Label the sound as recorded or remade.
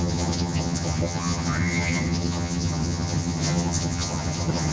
remade